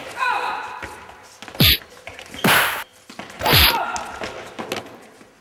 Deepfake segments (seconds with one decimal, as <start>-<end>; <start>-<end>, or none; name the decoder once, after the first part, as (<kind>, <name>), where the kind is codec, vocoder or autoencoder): none

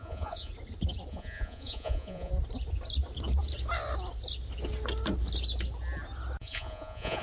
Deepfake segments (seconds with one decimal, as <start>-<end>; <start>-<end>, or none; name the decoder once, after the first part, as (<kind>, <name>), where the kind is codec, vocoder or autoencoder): 0.0-0.5 (vocoder, Vocos); 1.1-2.3; 6.4-7.2

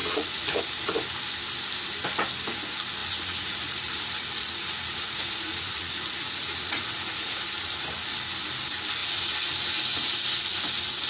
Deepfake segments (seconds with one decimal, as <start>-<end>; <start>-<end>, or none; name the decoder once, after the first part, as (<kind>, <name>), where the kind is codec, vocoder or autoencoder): 0.0-0.6 (vocoder, Vocos); 3.0-7.4

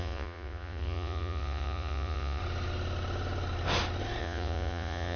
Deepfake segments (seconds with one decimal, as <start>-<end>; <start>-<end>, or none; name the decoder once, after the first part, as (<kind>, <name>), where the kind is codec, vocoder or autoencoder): 0.0-2.4 (vocoder, Vocos); 4.2-5.2

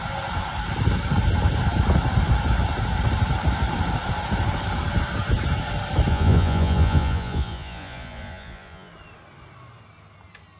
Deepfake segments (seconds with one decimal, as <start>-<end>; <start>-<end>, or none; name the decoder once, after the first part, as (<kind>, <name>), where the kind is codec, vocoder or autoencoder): 6.1-8.9 (vocoder, Vocos)

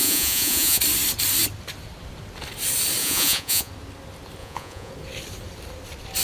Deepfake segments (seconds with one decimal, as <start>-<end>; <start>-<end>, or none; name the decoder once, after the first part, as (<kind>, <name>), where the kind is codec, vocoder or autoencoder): 0.0-0.8 (vocoder, Vocos); 3.0-3.7; 4.4-4.9

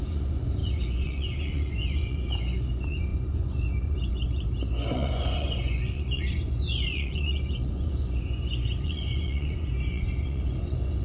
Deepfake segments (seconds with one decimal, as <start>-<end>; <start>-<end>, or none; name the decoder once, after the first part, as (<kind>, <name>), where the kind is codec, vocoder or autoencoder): 0.0-11.0 (vocoder, Vocos)

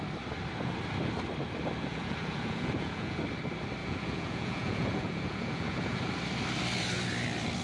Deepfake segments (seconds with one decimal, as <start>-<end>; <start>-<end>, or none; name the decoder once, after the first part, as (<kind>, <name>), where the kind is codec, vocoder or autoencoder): 1.9-3.2 (vocoder, Vocos); 3.8-6.0